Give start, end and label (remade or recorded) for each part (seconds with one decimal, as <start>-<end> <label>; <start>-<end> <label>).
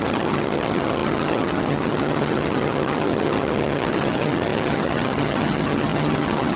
0.0-6.6 remade